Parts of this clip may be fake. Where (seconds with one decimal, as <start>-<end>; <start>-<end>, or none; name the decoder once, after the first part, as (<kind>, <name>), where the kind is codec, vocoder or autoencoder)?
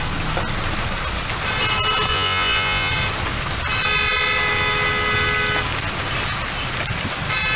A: 2.1-2.9 (vocoder, Vocos)